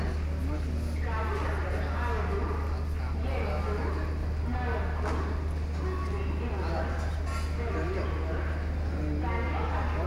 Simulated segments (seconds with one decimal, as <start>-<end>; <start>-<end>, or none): none

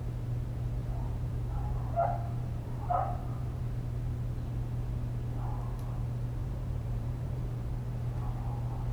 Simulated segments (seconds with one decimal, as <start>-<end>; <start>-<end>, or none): 0.8-3.6; 6.4-7.7

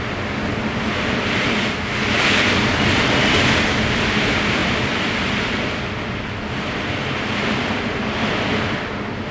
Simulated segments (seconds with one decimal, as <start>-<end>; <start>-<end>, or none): 4.6-5.4

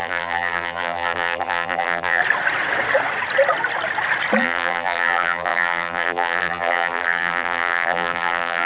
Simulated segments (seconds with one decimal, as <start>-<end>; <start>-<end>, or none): 0.0-2.2; 4.4-8.7

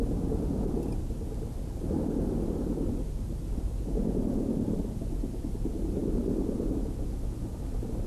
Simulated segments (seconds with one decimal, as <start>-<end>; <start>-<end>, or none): none

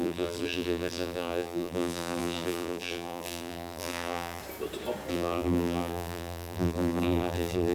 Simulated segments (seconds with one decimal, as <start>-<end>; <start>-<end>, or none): 0.0-4.4; 5.1-7.7

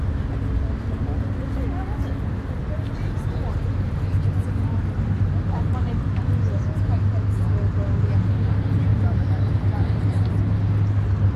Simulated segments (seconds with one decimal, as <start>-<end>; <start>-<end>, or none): 8.9-10.3